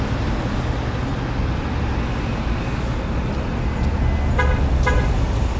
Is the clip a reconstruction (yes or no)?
no